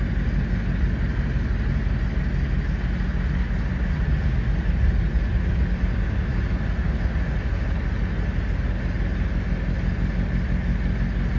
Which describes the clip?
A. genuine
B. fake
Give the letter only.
A